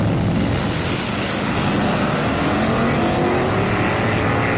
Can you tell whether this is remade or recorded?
recorded